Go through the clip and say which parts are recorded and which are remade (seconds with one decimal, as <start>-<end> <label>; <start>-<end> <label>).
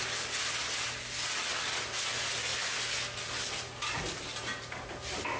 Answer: 0.0-5.4 recorded